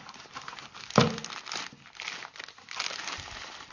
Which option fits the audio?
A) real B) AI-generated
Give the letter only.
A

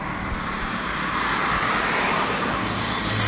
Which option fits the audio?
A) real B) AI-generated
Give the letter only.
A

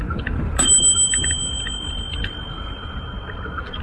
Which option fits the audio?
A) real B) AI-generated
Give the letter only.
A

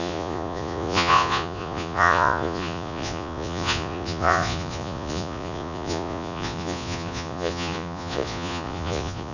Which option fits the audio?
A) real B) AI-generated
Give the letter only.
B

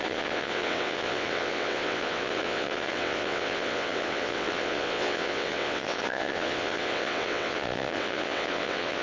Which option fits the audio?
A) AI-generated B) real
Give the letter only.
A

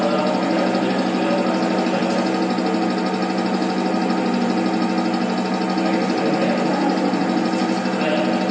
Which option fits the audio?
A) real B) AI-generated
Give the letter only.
A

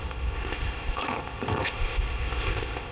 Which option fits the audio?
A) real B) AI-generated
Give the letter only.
B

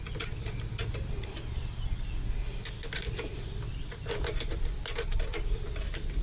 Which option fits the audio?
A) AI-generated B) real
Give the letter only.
B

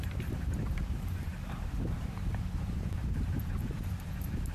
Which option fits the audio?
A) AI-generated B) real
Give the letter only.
A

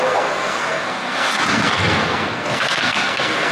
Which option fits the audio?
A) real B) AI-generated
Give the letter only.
B